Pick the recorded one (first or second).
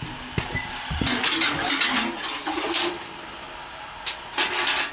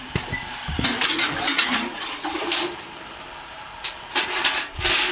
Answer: first